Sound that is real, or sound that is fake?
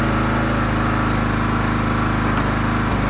real